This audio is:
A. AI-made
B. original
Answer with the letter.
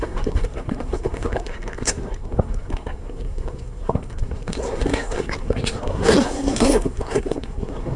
A